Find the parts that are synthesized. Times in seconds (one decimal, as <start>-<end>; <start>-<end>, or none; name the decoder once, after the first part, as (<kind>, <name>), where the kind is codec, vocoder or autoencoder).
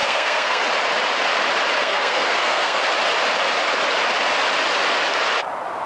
0.0-0.6 (codec, SNAC); 1.8-2.8